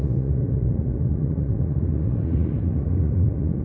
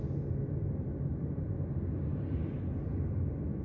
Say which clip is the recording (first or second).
second